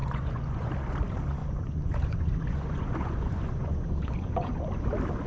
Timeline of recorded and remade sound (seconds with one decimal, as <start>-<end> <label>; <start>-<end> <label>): 0.0-0.7 remade; 0.7-1.4 recorded; 1.4-4.6 remade; 4.6-5.3 recorded